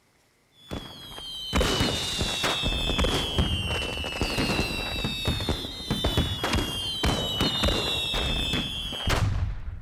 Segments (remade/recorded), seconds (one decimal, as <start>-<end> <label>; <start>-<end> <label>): 0.0-5.5 recorded; 5.5-8.8 remade; 8.8-9.8 recorded